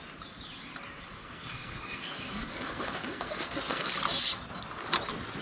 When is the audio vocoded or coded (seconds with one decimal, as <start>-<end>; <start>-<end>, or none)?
1.2-3.9